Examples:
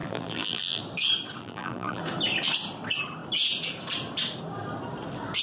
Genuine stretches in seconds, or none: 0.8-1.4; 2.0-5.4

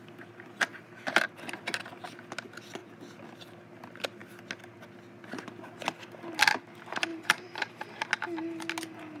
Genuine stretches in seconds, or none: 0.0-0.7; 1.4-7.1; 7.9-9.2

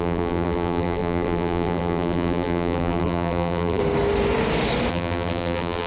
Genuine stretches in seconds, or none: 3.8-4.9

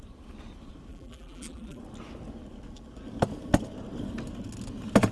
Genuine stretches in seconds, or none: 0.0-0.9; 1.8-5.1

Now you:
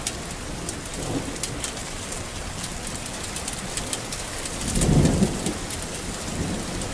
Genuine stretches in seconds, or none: 0.0-1.8; 3.1-6.9

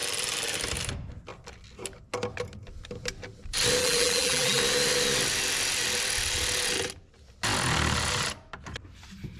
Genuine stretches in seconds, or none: 0.0-3.8; 4.6-9.4

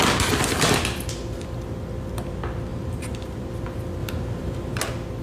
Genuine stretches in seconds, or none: 0.0-2.7; 3.5-4.0; 4.8-5.2